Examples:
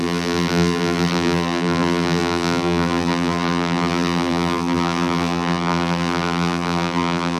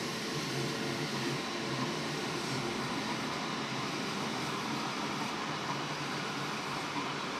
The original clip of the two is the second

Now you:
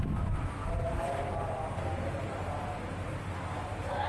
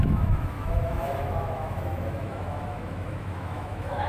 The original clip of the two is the first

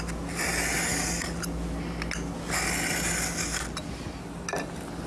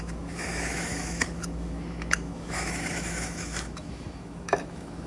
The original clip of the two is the first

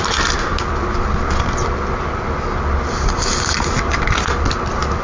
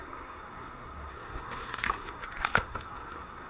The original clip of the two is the first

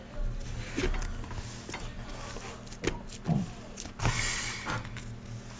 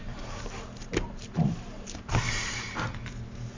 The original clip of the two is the first